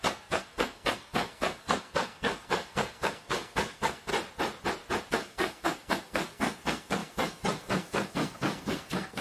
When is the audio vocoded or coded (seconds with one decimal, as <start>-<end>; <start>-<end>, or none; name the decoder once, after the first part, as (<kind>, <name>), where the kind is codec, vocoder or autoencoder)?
0.0-4.1 (codec, SNAC); 5.1-9.2